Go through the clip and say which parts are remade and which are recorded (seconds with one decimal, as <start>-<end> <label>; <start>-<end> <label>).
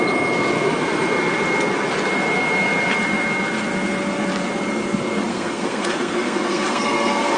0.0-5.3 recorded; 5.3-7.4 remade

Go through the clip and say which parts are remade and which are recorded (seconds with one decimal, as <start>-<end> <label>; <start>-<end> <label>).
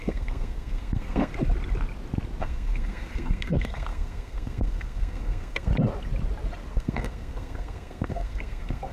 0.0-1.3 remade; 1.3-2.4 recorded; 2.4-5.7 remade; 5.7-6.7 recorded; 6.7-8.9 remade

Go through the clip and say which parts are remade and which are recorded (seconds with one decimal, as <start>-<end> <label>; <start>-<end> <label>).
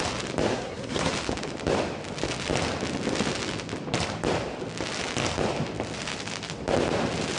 0.0-0.5 recorded; 0.5-1.1 remade; 1.1-7.4 recorded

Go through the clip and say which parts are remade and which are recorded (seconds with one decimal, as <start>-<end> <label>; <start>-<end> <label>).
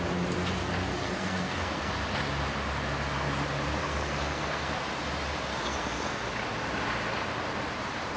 0.0-0.9 recorded; 0.9-1.9 remade; 1.9-3.8 recorded; 3.8-4.8 remade; 4.8-5.5 recorded; 5.5-6.2 remade; 6.2-8.2 recorded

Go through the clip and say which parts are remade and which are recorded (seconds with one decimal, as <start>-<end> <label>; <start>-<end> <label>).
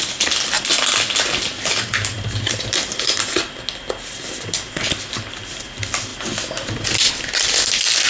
0.0-8.1 recorded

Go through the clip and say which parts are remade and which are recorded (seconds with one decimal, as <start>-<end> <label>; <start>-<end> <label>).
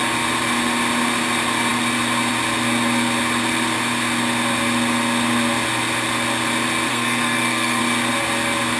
0.0-6.9 recorded; 6.9-7.8 remade; 7.8-8.8 recorded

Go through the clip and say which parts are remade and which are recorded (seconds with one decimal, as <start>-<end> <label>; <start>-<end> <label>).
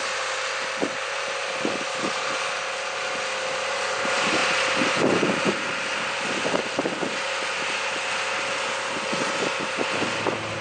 0.0-10.6 recorded